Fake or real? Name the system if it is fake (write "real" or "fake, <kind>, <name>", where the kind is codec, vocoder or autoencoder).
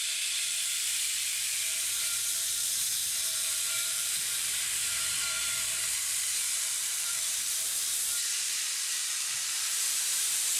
fake, vocoder, BigVGAN v2